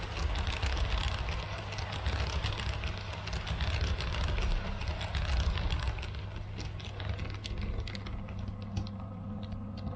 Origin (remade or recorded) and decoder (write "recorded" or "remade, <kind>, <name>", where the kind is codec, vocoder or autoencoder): recorded